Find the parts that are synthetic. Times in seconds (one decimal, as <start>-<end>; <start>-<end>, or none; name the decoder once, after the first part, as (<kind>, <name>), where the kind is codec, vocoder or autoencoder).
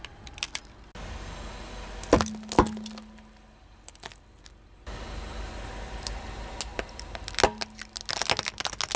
none